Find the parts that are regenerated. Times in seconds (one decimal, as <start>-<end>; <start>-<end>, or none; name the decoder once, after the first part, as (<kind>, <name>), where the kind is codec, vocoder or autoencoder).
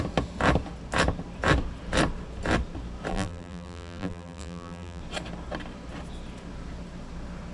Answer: 3.1-5.0 (vocoder, BigVGAN v2)